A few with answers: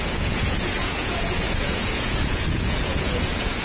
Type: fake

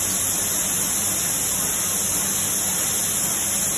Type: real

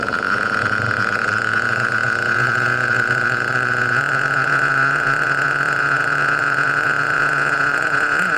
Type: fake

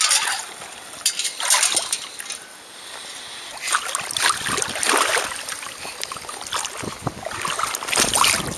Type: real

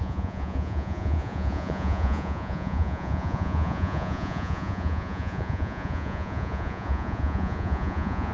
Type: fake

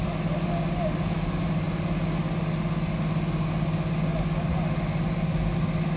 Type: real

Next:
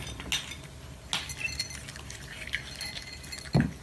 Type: real